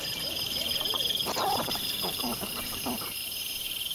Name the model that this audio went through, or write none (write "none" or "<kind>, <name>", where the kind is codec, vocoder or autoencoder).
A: vocoder, BigVGAN v2